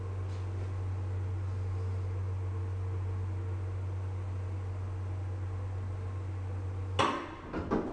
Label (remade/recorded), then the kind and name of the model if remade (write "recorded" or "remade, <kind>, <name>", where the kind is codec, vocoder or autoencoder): recorded